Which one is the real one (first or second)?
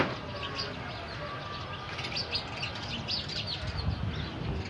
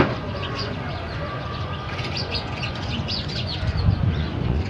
first